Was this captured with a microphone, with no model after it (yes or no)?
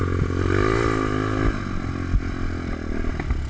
yes